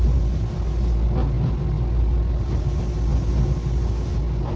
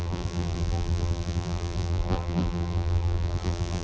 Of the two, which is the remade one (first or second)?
second